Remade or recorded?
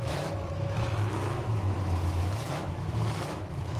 remade